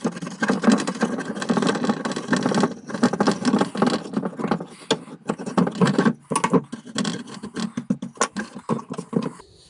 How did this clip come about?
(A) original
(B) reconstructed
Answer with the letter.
A